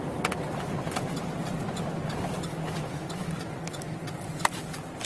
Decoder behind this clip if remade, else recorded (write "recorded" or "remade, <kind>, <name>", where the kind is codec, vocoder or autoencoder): recorded